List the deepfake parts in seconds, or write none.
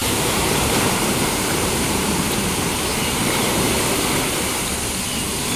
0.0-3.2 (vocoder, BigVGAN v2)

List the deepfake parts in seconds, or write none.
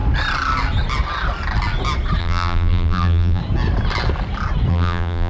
2.2-3.4 (vocoder, BigVGAN v2); 4.7-5.3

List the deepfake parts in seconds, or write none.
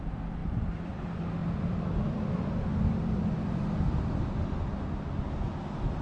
0.4-1.0 (vocoder, BigVGAN v2); 1.4-4.3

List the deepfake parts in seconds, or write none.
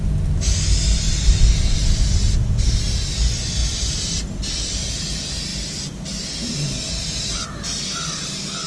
none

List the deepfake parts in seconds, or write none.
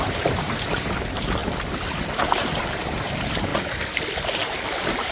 0.0-1.4 (vocoder, BigVGAN v2); 2.2-3.5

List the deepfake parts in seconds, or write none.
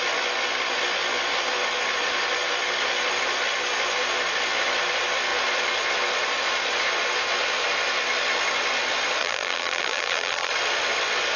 9.2-10.5 (vocoder, BigVGAN v2)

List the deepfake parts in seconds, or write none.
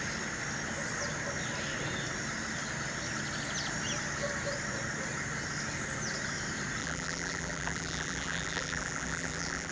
6.8-9.7 (vocoder, BigVGAN v2)